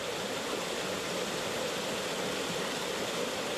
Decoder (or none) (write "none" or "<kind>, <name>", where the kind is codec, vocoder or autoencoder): none